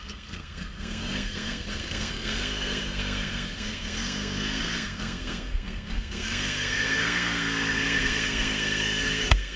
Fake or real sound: fake